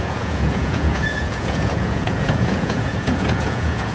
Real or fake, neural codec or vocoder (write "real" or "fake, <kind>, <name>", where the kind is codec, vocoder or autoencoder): fake, vocoder, Vocos